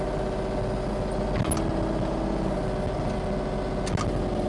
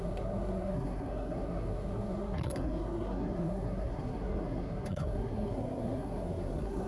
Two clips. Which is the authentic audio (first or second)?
first